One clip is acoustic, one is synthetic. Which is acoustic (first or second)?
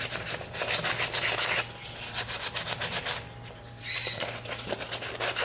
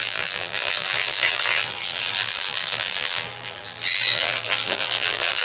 first